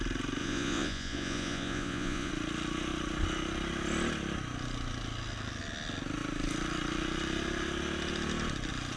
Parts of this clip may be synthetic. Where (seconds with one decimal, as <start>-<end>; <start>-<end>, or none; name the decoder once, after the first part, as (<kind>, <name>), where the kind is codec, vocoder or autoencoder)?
0.4-2.3 (vocoder, Vocos)